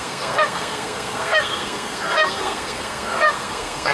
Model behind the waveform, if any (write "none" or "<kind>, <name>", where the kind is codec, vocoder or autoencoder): codec, SNAC